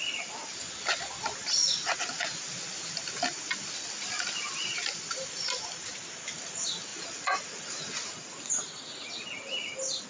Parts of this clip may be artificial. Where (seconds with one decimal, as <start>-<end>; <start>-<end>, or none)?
1.6-2.4; 6.9-8.6